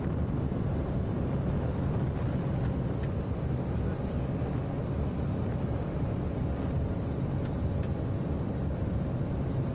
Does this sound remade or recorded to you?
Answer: recorded